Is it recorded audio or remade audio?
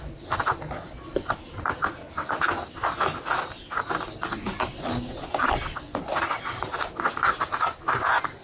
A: recorded